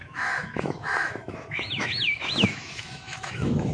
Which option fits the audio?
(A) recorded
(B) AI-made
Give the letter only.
B